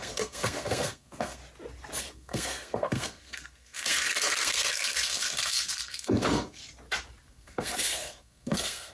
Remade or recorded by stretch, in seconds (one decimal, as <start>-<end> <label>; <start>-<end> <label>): 0.0-1.4 remade; 1.4-2.0 recorded; 2.0-6.6 remade; 6.6-7.3 recorded; 7.3-8.9 remade